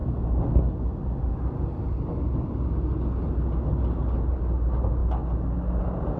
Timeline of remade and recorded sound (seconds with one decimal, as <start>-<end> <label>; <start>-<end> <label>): 0.0-6.2 recorded